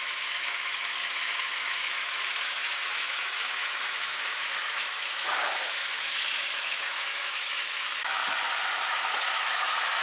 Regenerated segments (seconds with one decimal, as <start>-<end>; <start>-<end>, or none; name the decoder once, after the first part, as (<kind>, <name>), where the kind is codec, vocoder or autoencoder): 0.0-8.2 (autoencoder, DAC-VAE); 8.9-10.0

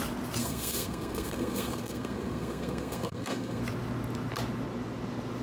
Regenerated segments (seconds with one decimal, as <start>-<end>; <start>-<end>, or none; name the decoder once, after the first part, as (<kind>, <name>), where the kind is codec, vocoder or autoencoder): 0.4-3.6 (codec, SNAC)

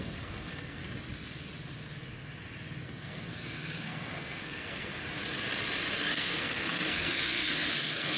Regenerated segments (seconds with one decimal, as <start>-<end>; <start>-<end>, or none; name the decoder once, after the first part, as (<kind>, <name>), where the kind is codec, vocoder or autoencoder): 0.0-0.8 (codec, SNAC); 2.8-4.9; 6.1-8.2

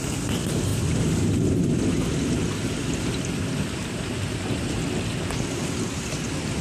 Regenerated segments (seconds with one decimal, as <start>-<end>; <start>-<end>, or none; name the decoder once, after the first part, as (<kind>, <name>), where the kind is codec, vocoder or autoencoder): 0.7-4.7 (vocoder, BigVGAN v2)

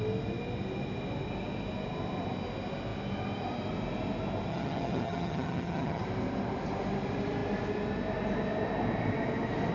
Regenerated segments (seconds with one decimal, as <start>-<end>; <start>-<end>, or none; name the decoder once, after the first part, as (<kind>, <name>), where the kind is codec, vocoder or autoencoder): 4.5-6.0 (vocoder, HiFi-GAN)

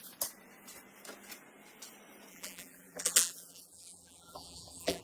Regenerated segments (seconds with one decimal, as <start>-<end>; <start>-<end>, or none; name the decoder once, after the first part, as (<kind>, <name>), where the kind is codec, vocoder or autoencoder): 2.3-5.0 (vocoder, BigVGAN v2)

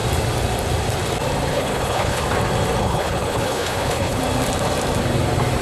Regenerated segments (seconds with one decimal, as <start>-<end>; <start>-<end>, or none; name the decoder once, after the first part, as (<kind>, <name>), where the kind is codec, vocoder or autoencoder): 1.5-2.2 (codec, HILCodec); 2.8-4.2

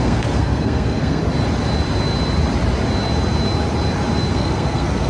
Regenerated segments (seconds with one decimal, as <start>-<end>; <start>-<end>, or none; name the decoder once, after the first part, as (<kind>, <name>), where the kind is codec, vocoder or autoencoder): 0.0-1.2 (codec, SNAC); 4.3-5.1